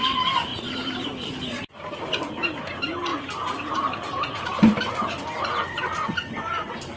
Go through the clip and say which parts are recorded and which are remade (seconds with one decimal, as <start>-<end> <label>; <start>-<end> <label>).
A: 0.0-0.5 recorded; 0.5-1.0 remade; 1.0-3.1 recorded; 3.1-5.2 remade; 5.2-7.0 recorded